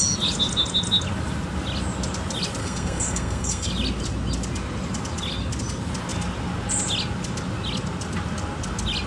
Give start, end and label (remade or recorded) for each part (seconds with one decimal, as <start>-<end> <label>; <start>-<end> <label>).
0.0-2.6 recorded; 2.6-3.7 remade; 3.7-9.1 recorded

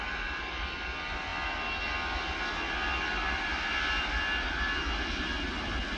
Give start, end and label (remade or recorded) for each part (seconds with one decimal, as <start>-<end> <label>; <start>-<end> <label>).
0.0-6.0 recorded

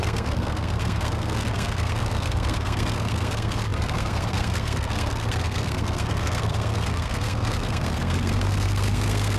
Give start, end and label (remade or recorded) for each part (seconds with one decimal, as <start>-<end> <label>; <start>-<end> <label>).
0.0-9.4 remade

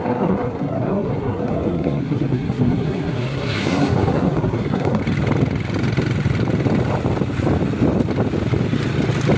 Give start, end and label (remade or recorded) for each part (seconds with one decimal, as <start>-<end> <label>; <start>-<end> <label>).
0.0-5.0 remade; 5.0-9.4 recorded

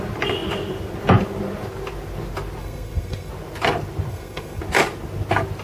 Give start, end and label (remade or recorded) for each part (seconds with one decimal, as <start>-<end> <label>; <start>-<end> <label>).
0.0-2.6 recorded; 2.6-3.3 remade; 3.3-4.1 recorded; 4.1-4.6 remade; 4.6-5.6 recorded

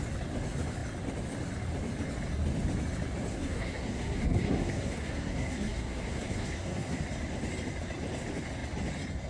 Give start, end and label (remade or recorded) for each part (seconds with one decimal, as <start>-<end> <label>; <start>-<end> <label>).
0.0-3.3 recorded; 3.3-7.0 remade; 7.0-9.3 recorded

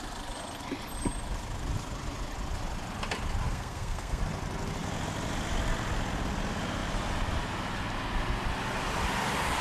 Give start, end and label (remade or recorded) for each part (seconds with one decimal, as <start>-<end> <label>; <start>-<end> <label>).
0.0-3.5 recorded; 3.5-4.2 remade; 4.2-9.6 recorded